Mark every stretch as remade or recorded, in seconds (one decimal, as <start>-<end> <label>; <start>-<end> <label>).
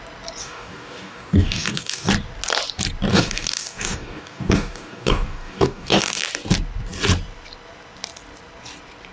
0.0-0.4 recorded; 0.4-2.1 remade; 2.1-3.1 recorded; 3.1-6.2 remade; 6.2-9.1 recorded